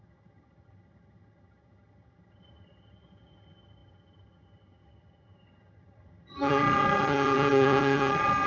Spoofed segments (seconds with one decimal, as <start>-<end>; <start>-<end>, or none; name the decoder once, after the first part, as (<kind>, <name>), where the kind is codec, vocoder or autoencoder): 0.0-8.5 (vocoder, HiFi-GAN)